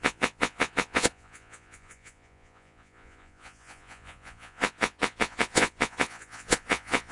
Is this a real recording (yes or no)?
no